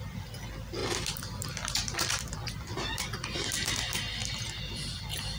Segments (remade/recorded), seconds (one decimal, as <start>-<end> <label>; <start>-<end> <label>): 0.0-0.8 recorded; 0.8-2.5 remade; 2.5-5.4 recorded